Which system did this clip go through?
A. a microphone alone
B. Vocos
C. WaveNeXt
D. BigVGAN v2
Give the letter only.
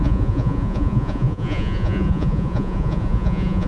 B